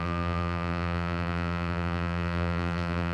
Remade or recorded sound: remade